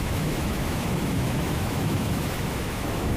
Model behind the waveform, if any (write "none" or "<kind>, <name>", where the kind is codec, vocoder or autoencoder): autoencoder, DAC-VAE